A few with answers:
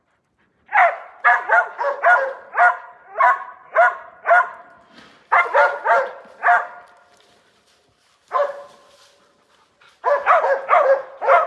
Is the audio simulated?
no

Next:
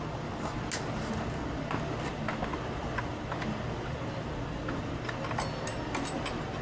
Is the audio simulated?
no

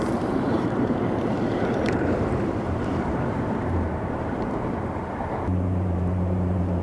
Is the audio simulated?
yes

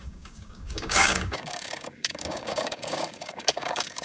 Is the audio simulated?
yes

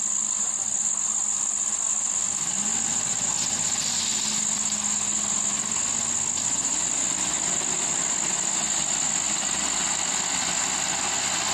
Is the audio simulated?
no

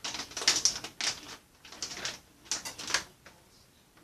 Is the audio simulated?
no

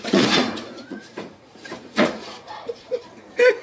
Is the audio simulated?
yes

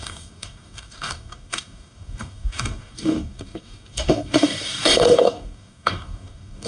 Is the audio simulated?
yes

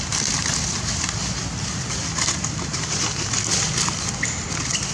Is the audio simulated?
no